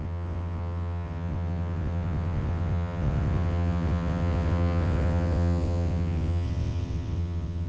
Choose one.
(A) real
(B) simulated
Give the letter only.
B